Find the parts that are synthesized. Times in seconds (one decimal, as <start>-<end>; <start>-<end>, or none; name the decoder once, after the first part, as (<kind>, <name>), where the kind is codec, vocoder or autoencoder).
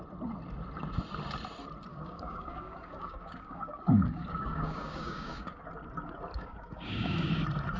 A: 1.9-5.6 (codec, DAC); 6.3-7.3